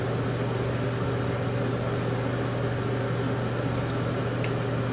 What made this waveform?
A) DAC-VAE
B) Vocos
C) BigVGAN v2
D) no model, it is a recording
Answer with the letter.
D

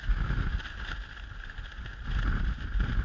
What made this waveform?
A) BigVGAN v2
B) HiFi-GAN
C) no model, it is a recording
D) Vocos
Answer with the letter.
C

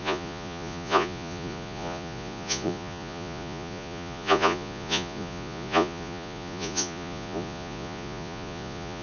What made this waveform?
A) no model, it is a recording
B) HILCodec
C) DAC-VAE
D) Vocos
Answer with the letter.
D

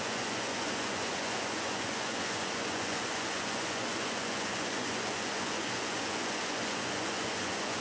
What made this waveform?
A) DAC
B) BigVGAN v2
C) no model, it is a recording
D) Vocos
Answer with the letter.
D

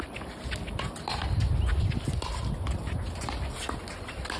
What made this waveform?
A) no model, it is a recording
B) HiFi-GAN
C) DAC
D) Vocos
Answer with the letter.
A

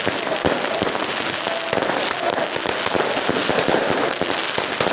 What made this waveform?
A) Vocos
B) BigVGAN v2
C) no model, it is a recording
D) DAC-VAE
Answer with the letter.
C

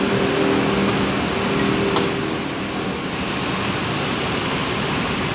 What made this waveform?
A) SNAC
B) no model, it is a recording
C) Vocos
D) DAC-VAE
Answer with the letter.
B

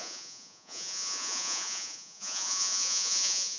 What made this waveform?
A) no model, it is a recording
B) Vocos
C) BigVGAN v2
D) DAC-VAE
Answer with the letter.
B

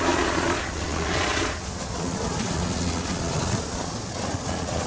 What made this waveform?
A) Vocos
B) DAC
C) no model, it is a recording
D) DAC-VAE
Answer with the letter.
A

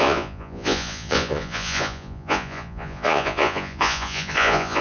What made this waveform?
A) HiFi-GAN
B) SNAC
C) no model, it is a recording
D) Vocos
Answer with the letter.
D